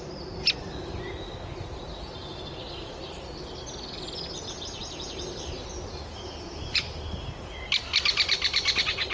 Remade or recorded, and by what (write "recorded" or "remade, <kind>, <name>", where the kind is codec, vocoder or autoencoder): remade, vocoder, BigVGAN v2